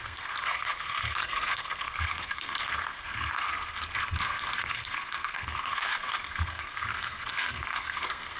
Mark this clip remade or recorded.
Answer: remade